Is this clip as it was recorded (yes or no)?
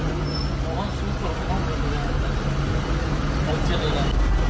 yes